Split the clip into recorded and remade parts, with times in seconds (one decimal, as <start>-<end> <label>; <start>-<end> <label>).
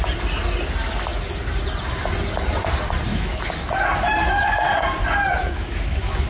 0.0-3.1 recorded; 3.1-3.7 remade; 3.7-5.4 recorded; 5.4-6.3 remade